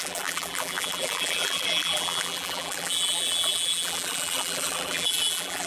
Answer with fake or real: fake